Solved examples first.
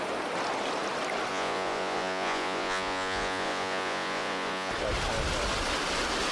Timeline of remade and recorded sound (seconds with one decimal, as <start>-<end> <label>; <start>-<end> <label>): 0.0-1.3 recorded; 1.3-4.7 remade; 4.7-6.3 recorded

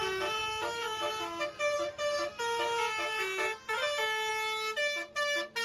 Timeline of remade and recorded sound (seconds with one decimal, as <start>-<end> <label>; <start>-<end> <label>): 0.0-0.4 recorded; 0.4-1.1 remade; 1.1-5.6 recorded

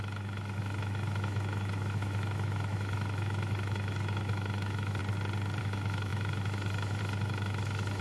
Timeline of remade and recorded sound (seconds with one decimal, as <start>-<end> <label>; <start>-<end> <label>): 0.0-5.0 remade; 5.0-5.6 recorded; 5.6-8.0 remade